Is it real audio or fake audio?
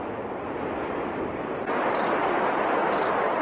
real